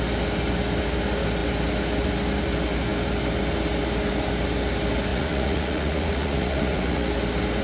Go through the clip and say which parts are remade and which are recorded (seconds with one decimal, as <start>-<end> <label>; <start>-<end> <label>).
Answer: 0.0-5.1 recorded; 5.1-7.1 remade; 7.1-7.6 recorded

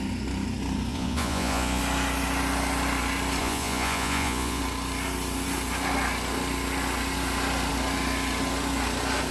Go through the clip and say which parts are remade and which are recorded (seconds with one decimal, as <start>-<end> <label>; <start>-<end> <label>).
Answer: 0.0-0.9 recorded; 0.9-1.8 remade; 1.8-3.4 recorded; 3.4-4.6 remade; 4.6-9.3 recorded

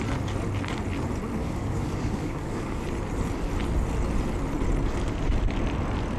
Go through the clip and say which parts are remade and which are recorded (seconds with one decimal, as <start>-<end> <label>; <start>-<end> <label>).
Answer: 0.0-1.4 recorded; 1.4-2.8 remade; 2.8-6.2 recorded

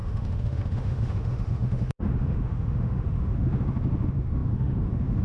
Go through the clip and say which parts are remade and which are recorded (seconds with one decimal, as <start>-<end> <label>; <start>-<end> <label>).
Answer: 0.0-5.2 remade

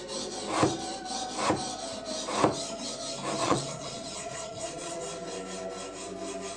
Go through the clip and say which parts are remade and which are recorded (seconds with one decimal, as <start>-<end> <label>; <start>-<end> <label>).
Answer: 0.0-3.4 recorded; 3.4-5.0 remade; 5.0-6.6 recorded

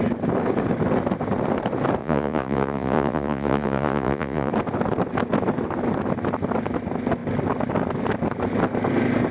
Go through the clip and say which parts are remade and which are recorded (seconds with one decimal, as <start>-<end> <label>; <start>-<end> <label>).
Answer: 0.0-2.0 recorded; 2.0-4.5 remade; 4.5-9.3 recorded

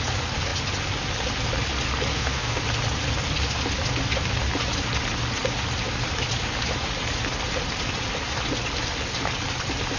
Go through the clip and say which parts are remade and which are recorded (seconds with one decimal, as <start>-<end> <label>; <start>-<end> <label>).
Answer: 0.0-2.1 recorded; 2.1-2.6 remade; 2.6-10.0 recorded